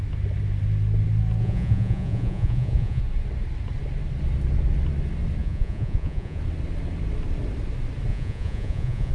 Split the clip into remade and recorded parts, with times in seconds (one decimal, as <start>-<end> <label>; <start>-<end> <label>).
0.0-1.4 recorded; 1.4-3.0 remade; 3.0-5.4 recorded; 5.4-6.4 remade; 6.4-8.1 recorded; 8.1-9.1 remade